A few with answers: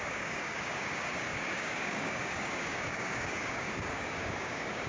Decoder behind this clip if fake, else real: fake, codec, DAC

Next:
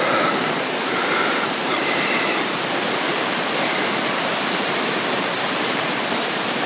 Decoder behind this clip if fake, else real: fake, vocoder, BigVGAN v2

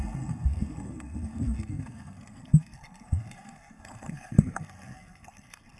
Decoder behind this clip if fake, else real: fake, codec, SNAC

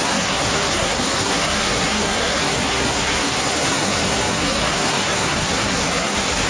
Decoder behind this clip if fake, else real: fake, codec, SNAC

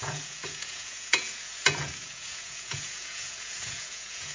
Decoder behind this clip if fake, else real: fake, vocoder, Vocos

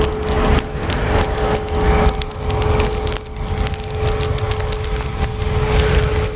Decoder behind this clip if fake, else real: real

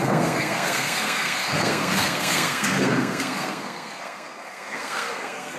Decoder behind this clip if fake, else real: fake, codec, SNAC